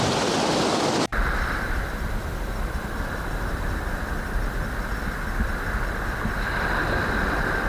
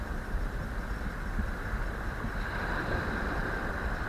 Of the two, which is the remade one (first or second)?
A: second